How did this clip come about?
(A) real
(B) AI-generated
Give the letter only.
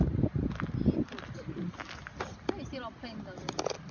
A